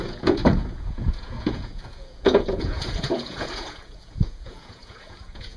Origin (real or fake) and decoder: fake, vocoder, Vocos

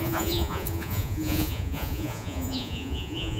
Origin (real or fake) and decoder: fake, vocoder, Vocos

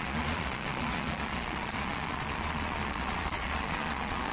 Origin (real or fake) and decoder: fake, vocoder, Vocos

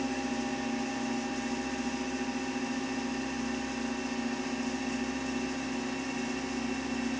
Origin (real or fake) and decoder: real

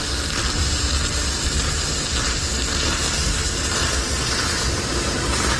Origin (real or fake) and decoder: real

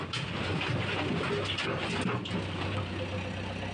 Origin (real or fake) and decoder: real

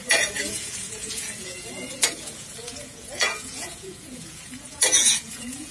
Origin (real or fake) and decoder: fake, vocoder, Vocos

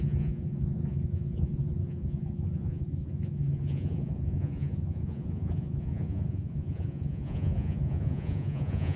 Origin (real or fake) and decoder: fake, vocoder, Vocos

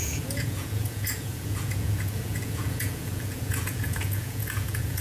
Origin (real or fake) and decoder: fake, vocoder, Vocos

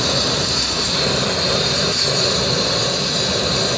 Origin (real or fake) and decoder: real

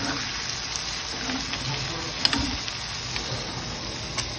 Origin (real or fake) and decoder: real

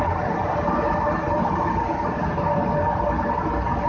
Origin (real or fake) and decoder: real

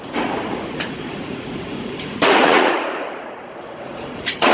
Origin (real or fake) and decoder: fake, vocoder, Vocos